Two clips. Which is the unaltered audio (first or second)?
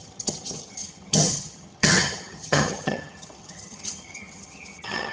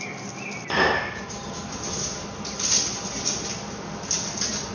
second